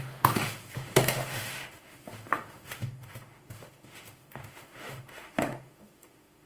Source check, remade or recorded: remade